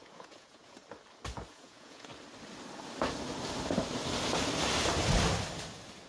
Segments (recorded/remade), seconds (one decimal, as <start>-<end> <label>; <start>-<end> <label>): 0.0-0.8 remade; 0.8-1.5 recorded; 1.5-2.1 remade; 2.1-6.1 recorded